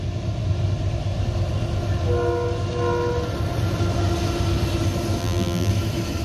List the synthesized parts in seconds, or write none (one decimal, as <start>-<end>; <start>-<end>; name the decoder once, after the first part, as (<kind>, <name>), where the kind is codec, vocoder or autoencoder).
5.2-5.7 (vocoder, BigVGAN v2)